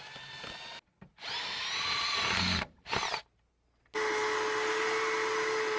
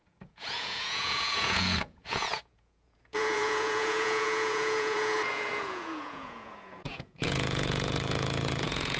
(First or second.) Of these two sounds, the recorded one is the first